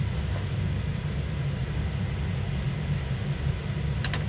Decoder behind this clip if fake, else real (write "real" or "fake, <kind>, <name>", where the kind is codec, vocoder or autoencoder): real